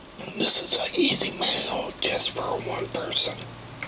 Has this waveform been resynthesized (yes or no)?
no